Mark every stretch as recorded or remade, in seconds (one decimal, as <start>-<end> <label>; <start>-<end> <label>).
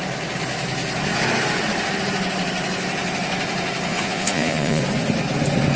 0.0-3.9 recorded; 3.9-4.8 remade; 4.8-5.8 recorded